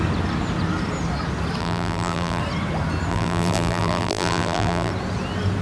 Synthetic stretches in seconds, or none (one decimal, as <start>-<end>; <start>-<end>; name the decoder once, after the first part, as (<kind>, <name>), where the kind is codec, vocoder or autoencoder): 1.6-2.4 (vocoder, BigVGAN v2); 3.1-4.9

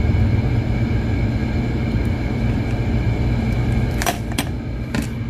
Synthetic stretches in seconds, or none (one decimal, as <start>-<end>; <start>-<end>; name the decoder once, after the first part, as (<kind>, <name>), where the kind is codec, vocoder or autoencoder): 1.4-4.6 (vocoder, BigVGAN v2)

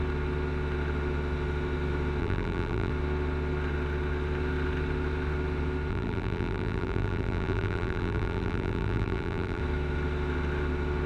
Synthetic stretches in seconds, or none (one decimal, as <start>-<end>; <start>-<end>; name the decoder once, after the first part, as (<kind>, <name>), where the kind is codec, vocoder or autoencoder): 2.2-2.9 (vocoder, BigVGAN v2); 5.9-9.6

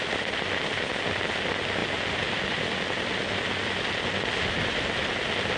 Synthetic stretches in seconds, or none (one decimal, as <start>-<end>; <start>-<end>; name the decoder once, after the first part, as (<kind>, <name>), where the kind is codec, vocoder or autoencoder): none

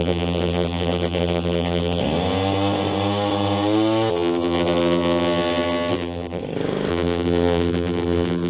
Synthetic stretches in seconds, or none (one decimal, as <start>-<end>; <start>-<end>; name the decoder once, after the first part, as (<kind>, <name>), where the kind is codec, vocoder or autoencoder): 0.0-2.0 (vocoder, BigVGAN v2); 4.1-6.4; 6.9-8.5

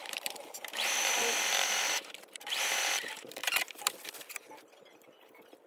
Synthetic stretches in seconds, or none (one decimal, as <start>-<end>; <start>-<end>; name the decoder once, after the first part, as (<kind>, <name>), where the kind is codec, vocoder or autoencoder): 0.0-3.5 (vocoder, BigVGAN v2); 4.3-5.7